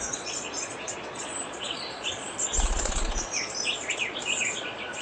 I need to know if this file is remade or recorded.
remade